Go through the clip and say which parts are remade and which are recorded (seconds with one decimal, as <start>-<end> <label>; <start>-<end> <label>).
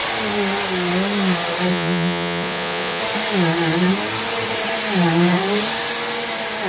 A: 0.0-1.7 recorded; 1.7-3.0 remade; 3.0-6.7 recorded